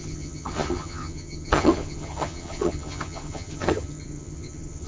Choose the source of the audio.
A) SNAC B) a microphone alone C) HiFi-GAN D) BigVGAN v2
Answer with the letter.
C